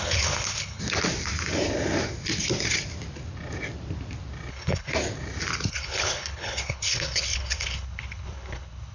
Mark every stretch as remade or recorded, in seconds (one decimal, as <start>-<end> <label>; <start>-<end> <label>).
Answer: 0.0-0.8 remade; 0.8-4.5 recorded; 4.5-4.9 remade; 4.9-5.7 recorded; 5.7-8.9 remade